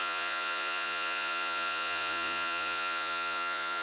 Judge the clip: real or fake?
fake